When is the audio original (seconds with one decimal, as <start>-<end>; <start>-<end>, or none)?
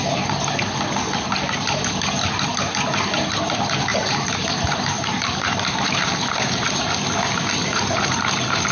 0.0-3.9; 6.8-8.7